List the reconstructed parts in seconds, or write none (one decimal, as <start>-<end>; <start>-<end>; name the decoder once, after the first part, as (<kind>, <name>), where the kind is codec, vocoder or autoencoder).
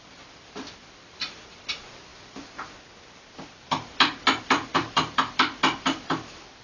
0.0-2.1 (vocoder, BigVGAN v2); 4.4-6.6